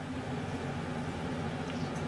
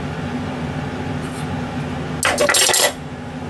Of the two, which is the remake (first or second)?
first